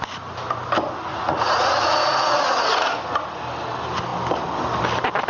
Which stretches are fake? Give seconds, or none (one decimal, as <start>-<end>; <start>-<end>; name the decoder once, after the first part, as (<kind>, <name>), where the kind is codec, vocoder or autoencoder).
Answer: 1.1-3.0 (vocoder, Vocos)